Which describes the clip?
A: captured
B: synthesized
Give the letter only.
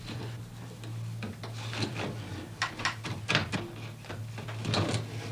A